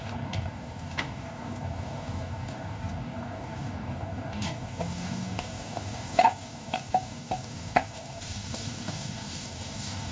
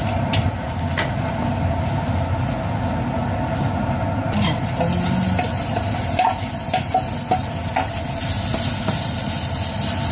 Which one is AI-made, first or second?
first